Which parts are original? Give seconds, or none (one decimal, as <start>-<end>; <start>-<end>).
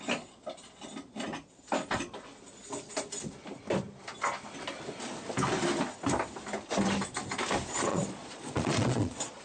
0.0-7.9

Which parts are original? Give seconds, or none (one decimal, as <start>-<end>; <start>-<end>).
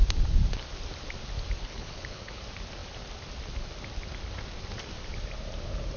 0.0-1.6; 2.4-6.0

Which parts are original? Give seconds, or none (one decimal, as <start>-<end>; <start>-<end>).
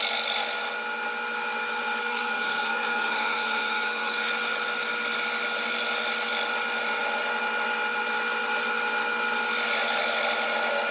0.0-2.0; 4.3-10.9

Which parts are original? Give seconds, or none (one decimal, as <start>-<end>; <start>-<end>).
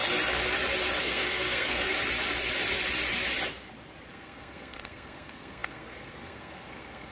0.0-1.0; 1.9-4.1